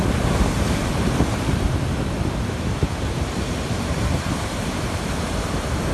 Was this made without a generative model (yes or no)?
no